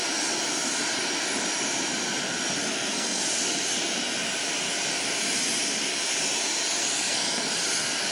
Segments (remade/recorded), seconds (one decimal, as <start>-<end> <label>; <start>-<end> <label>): 0.0-2.6 recorded; 2.6-3.2 remade; 3.2-6.8 recorded; 6.8-7.5 remade; 7.5-8.1 recorded